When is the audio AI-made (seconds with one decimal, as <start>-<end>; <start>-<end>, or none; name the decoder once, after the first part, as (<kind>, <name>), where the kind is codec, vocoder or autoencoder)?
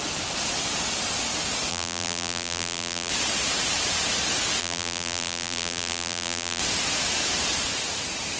1.7-3.1 (vocoder, BigVGAN v2); 4.6-6.6